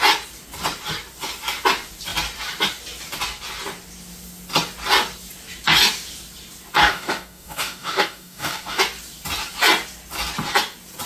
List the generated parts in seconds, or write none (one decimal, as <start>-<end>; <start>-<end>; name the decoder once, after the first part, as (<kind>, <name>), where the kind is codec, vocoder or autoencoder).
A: 6.8-8.8 (codec, DAC)